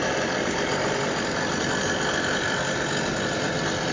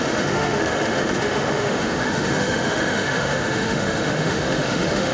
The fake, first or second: second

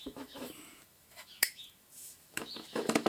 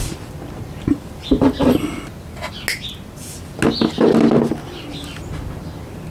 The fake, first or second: first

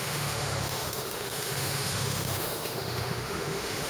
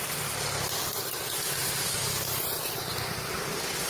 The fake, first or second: first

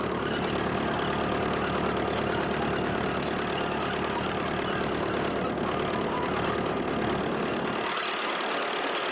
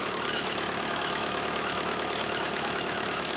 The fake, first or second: second